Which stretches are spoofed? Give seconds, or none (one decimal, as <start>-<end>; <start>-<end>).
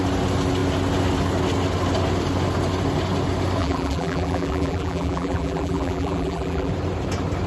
3.6-6.7